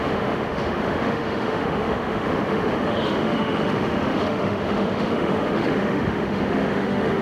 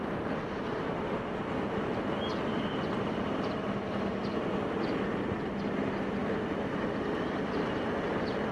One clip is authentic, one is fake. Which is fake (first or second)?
first